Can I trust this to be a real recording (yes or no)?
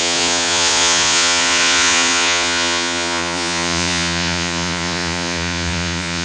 no